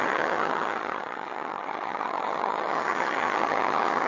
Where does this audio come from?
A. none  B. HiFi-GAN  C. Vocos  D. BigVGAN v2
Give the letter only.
B